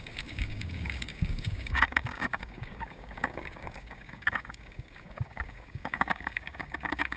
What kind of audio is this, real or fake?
fake